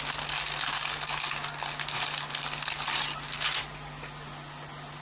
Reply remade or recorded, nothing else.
recorded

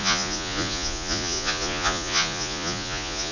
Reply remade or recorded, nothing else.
remade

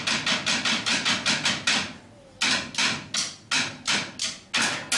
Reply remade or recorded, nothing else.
recorded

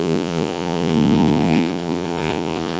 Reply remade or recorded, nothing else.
remade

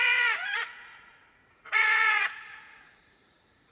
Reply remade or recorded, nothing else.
remade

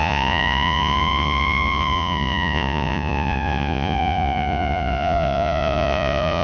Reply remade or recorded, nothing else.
remade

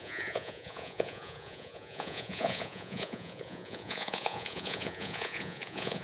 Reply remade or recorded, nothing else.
remade